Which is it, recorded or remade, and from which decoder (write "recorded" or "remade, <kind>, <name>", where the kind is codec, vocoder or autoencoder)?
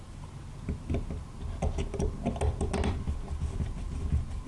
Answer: recorded